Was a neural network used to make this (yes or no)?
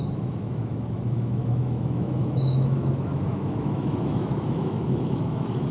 yes